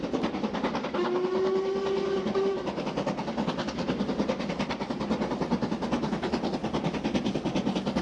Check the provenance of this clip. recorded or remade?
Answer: recorded